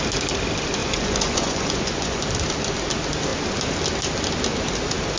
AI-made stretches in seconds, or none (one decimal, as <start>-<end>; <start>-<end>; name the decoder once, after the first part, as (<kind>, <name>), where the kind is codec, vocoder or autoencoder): 0.8-2.2 (vocoder, Vocos)

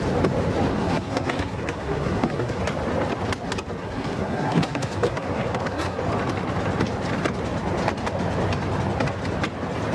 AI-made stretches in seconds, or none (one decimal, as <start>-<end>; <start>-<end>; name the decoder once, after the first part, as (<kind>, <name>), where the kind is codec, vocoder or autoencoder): 0.7-2.6 (codec, SNAC); 3.8-6.0